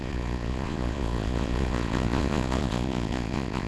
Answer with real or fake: fake